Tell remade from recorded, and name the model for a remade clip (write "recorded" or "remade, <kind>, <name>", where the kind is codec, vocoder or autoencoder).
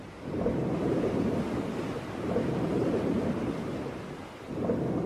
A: recorded